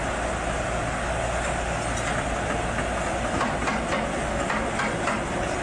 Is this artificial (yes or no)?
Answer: no